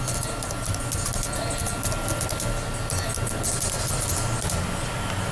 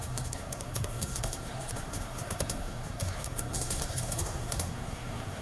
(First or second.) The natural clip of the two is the first